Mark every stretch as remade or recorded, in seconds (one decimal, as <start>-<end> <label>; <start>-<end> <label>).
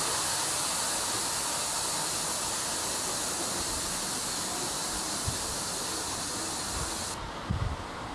0.0-8.1 recorded